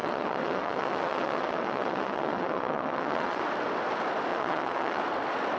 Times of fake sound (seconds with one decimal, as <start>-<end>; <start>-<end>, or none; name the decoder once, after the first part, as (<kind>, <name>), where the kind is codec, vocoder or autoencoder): 0.0-3.4 (vocoder, WaveNeXt); 4.3-5.0